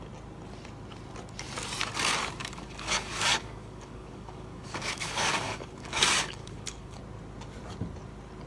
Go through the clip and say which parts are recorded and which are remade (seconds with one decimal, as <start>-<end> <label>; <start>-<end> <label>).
0.0-2.4 recorded; 2.4-7.0 remade; 7.0-8.5 recorded